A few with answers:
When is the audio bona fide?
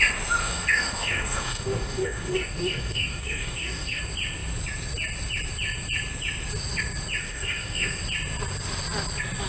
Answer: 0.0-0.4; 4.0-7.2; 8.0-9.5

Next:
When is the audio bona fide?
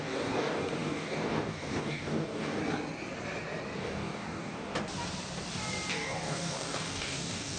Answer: 2.6-3.8; 4.7-5.9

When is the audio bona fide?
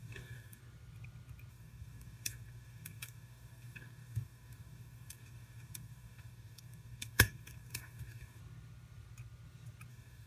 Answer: 0.6-1.5; 8.4-9.9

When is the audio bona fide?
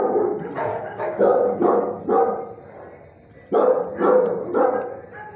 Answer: 0.0-0.7; 2.0-5.4